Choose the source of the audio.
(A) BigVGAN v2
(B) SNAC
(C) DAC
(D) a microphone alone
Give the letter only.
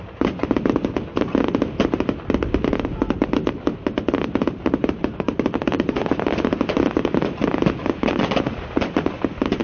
D